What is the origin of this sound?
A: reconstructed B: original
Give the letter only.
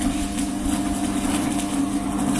B